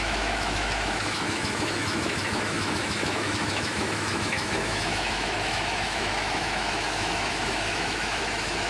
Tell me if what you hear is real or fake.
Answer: fake